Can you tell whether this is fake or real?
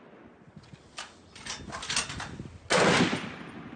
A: real